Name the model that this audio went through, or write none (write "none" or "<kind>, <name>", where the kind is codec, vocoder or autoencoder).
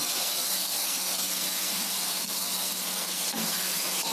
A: codec, SNAC